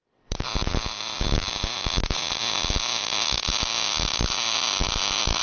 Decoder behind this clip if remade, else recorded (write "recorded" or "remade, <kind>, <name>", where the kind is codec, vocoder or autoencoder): recorded